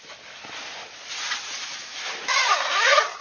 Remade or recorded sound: recorded